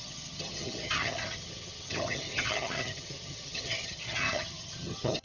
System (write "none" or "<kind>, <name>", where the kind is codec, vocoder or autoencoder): vocoder, HiFi-GAN